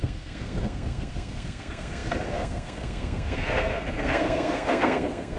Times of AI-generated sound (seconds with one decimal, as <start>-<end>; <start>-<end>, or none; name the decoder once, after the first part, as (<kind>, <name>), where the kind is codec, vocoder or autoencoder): 0.0-5.4 (codec, SNAC)